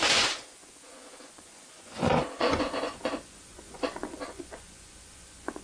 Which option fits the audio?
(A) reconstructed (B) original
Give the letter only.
A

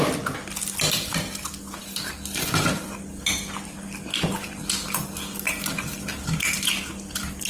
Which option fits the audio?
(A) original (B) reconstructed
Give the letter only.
A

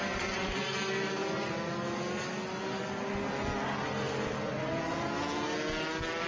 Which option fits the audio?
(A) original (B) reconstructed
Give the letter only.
A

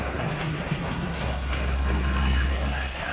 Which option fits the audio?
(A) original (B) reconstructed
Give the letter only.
B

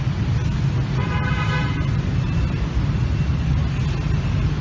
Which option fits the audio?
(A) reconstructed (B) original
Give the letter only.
B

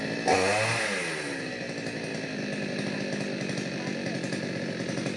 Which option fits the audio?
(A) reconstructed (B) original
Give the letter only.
B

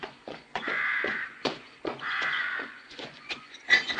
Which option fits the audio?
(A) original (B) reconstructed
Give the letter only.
B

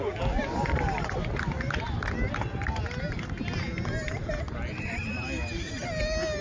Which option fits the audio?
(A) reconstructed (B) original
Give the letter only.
B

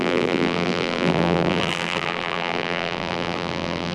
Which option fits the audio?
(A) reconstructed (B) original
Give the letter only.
A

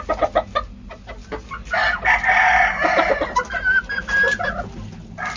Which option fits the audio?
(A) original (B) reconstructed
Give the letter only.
A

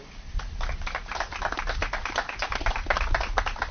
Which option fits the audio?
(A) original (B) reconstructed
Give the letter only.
A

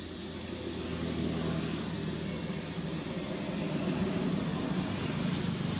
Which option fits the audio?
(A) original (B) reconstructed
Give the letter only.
A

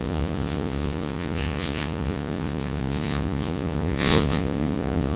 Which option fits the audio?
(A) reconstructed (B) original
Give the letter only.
A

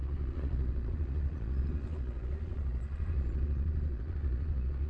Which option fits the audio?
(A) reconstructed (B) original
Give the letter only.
A